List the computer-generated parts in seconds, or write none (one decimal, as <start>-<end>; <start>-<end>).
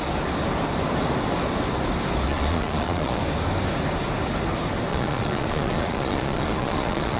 2.3-3.2; 4.9-7.2